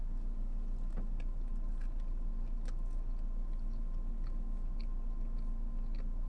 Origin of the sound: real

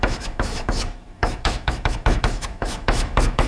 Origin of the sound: fake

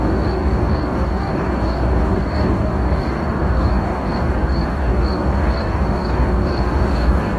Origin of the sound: fake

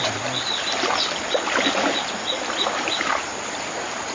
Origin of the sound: real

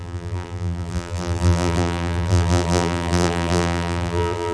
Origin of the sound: fake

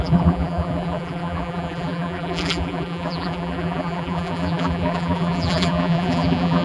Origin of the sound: fake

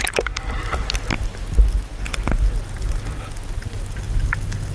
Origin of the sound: real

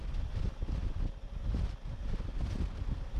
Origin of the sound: real